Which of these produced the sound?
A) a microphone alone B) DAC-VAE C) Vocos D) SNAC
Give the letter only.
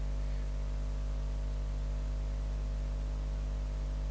A